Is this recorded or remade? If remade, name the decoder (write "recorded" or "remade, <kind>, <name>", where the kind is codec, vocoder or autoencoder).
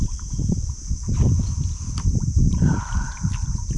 remade, vocoder, BigVGAN v2